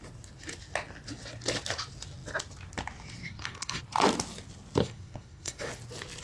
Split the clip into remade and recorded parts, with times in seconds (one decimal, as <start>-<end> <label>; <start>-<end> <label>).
0.0-3.2 recorded; 3.2-3.8 remade; 3.8-4.8 recorded; 4.8-5.7 remade; 5.7-6.2 recorded